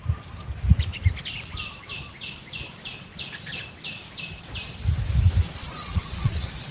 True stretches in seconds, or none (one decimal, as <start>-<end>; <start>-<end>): 0.0-5.6